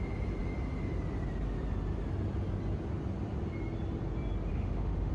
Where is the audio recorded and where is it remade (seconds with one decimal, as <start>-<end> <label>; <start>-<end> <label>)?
0.0-4.5 recorded; 4.5-5.1 remade